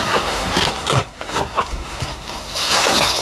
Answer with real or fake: fake